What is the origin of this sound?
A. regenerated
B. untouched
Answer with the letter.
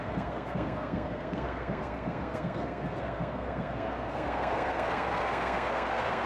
A